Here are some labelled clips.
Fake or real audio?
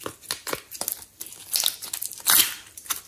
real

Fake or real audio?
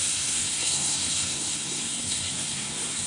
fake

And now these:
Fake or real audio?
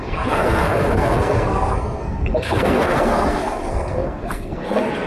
fake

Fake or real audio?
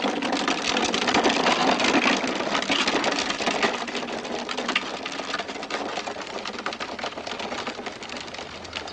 real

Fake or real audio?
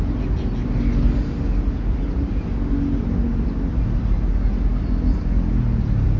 real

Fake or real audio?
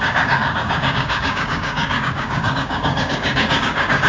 fake